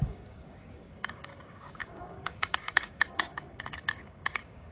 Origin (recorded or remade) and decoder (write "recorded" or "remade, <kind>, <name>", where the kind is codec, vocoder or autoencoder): remade, codec, DAC